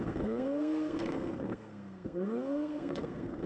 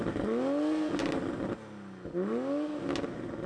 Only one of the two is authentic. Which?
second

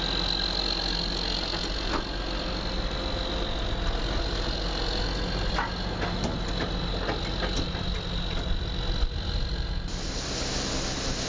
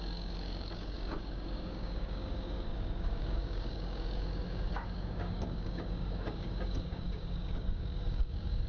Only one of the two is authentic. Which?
first